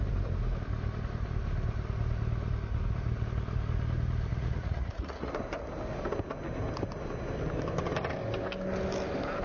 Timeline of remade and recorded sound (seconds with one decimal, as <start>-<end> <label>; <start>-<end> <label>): 0.0-4.3 recorded; 4.3-5.3 remade; 5.3-9.4 recorded